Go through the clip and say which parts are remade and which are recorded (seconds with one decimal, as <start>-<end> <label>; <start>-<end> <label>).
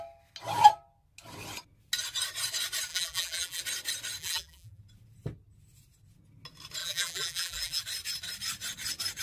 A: 0.0-2.9 recorded; 2.9-3.6 remade; 3.6-4.2 recorded; 4.2-4.8 remade; 4.8-6.8 recorded; 6.8-7.8 remade; 7.8-9.2 recorded